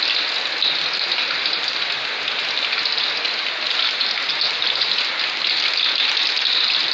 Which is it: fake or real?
real